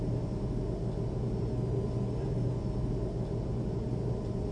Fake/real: real